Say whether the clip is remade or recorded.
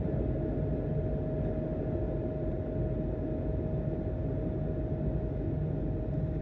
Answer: recorded